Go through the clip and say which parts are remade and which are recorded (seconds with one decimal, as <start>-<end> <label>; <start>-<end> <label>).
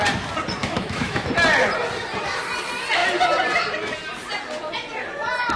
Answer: 0.0-0.6 recorded; 0.6-1.3 remade; 1.3-5.6 recorded